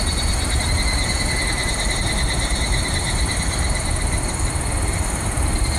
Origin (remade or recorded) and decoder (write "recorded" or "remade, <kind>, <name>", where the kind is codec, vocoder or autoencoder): recorded